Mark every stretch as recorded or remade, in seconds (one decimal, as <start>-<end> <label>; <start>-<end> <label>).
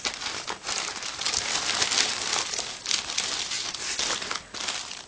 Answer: 0.0-5.1 recorded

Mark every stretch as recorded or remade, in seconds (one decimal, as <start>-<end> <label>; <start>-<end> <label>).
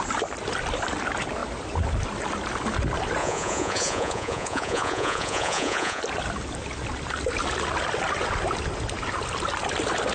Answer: 0.0-3.2 recorded; 3.2-6.0 remade; 6.0-10.1 recorded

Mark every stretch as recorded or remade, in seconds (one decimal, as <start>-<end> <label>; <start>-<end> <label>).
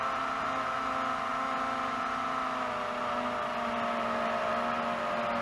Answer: 0.0-5.4 recorded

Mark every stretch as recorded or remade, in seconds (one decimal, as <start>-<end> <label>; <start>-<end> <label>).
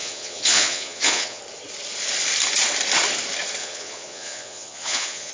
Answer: 0.0-1.4 remade; 1.4-3.6 recorded; 3.6-5.3 remade